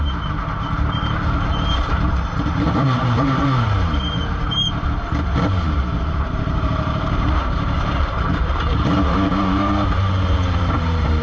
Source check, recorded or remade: remade